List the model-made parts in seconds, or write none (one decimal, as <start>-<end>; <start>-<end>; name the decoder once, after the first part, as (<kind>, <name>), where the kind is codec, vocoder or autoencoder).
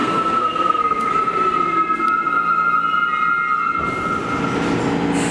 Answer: 0.0-1.1 (codec, SNAC)